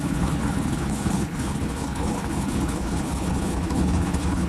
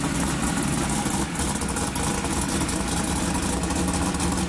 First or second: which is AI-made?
first